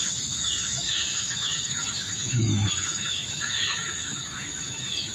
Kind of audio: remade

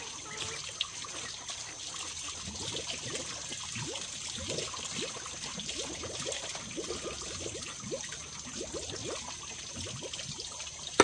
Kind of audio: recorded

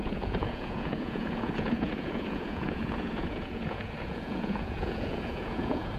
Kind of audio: remade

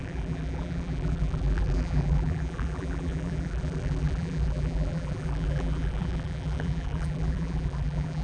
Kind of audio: remade